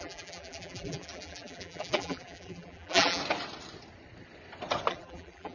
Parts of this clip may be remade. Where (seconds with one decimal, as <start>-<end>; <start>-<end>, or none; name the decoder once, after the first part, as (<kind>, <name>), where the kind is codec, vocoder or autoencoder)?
0.0-3.2 (vocoder, BigVGAN v2); 4.9-5.5